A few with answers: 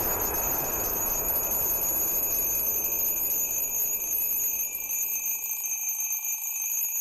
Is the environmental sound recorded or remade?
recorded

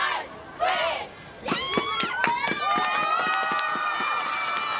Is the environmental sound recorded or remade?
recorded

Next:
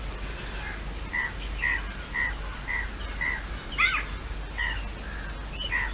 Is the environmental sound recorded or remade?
recorded